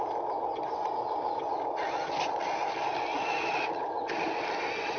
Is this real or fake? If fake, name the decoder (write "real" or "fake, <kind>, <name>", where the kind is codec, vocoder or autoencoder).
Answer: real